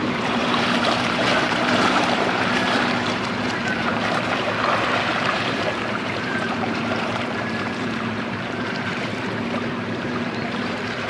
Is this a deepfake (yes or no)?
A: yes